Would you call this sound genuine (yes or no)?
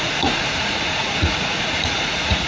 no